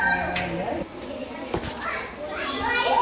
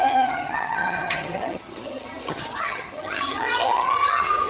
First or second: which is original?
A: first